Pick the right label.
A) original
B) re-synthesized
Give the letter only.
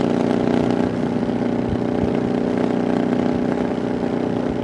A